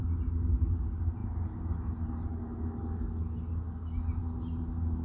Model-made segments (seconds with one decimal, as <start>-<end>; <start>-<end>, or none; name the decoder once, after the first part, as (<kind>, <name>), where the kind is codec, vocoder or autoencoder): none